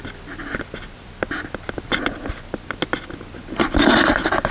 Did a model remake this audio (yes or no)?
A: no